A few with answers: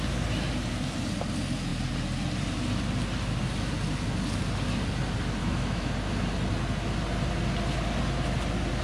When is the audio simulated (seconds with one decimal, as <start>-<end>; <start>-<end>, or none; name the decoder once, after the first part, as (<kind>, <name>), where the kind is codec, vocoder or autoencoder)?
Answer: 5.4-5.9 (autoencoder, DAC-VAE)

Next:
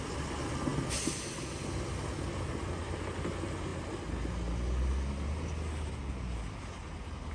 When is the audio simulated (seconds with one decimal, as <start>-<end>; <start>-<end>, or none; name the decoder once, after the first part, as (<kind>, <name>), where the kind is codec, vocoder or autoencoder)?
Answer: none

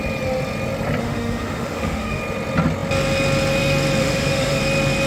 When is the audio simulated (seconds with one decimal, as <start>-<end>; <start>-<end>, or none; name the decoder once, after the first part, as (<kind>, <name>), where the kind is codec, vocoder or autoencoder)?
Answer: 1.0-2.2 (autoencoder, DAC-VAE); 4.0-4.6

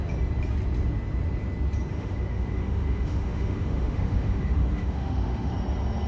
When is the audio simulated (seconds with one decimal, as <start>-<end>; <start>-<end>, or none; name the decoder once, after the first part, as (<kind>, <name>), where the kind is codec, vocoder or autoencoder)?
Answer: 1.9-5.5 (autoencoder, DAC-VAE)

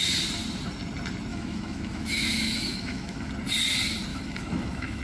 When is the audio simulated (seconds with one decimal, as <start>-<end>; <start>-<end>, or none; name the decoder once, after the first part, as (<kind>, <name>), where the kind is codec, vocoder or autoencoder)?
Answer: 1.3-3.3 (autoencoder, DAC-VAE); 4.1-5.0